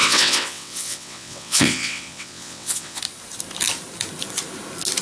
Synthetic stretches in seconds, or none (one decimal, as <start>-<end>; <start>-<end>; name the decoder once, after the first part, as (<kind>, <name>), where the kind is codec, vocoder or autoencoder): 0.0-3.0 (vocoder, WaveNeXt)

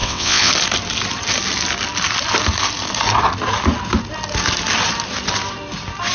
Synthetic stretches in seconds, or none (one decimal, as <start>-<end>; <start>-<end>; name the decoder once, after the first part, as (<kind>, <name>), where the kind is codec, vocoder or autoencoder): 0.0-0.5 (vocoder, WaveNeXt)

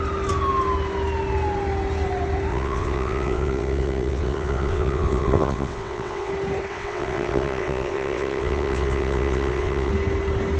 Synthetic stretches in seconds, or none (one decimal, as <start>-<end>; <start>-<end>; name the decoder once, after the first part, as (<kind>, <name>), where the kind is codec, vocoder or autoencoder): 2.5-6.3 (vocoder, WaveNeXt); 6.7-9.9

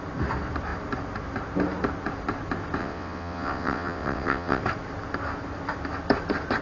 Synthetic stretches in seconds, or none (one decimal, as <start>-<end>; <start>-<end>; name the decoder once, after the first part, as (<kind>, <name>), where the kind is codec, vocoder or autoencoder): 2.8-4.6 (vocoder, WaveNeXt)

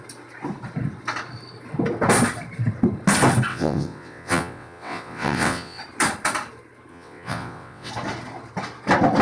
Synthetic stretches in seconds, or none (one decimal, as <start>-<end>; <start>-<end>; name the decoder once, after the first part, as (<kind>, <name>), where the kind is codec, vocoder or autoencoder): 3.5-5.8 (vocoder, WaveNeXt); 6.9-7.9

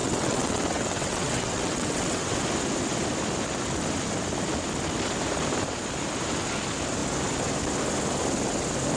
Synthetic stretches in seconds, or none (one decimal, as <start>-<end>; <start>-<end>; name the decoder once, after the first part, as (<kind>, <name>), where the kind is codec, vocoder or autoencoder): 0.0-2.4 (vocoder, WaveNeXt)

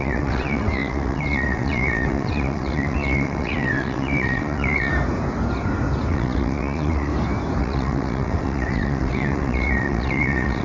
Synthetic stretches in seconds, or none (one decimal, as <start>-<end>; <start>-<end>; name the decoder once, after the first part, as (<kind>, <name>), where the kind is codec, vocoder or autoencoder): 0.0-4.9 (vocoder, WaveNeXt); 6.1-7.1; 7.6-10.6

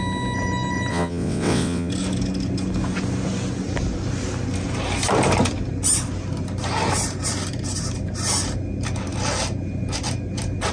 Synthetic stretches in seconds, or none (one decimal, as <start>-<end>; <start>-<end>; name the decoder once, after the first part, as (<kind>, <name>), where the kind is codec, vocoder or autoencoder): 0.9-1.9 (vocoder, WaveNeXt)